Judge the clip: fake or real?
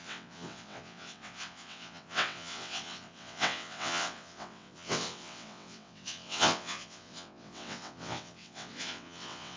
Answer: fake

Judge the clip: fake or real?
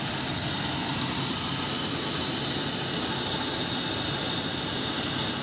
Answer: real